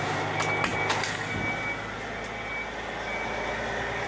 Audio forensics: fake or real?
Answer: real